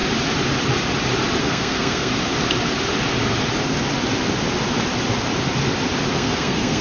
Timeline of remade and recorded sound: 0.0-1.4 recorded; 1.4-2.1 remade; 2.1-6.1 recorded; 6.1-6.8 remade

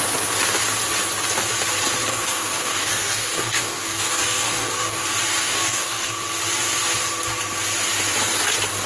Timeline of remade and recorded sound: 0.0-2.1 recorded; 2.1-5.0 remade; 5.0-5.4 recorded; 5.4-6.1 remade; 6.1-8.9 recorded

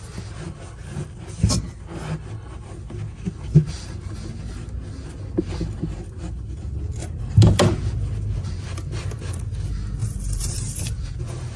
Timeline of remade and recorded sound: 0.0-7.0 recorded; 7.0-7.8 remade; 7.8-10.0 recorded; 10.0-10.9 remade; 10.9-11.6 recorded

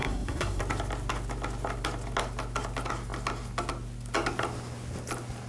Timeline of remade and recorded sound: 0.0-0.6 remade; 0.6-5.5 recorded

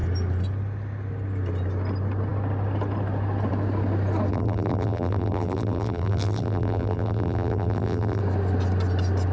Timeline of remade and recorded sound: 0.0-4.3 recorded; 4.3-8.2 remade; 8.2-9.3 recorded

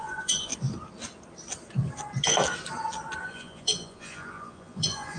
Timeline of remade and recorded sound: 0.0-0.5 remade; 0.5-3.2 recorded; 3.2-5.2 remade

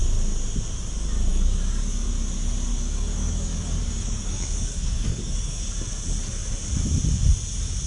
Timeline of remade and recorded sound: 0.0-1.3 recorded; 1.3-2.1 remade; 2.1-2.7 recorded; 2.7-5.6 remade; 5.6-7.9 recorded